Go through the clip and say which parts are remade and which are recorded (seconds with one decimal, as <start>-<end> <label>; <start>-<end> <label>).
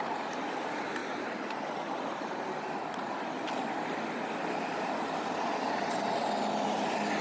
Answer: 0.0-1.0 recorded; 1.0-2.2 remade; 2.2-7.2 recorded